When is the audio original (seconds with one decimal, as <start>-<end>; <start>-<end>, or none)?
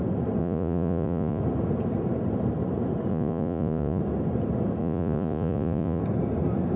0.0-0.4; 1.4-3.1; 4.0-4.8; 6.0-6.8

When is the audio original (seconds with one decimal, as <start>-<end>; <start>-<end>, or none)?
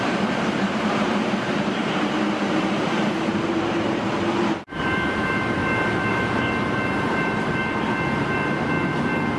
5.6-6.1; 7.6-9.4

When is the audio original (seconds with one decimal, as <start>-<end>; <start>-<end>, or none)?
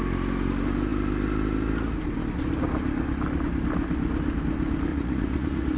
0.0-4.9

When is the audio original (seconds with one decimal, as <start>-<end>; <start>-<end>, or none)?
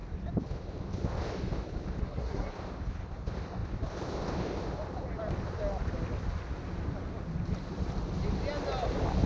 0.0-2.0; 2.5-9.3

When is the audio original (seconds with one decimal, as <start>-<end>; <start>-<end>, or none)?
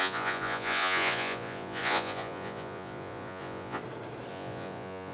3.8-4.3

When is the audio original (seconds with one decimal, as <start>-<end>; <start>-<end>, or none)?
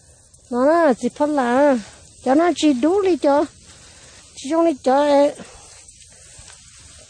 0.0-7.1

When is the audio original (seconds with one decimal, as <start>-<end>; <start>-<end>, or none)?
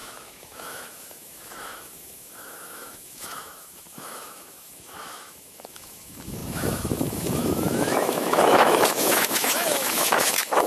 none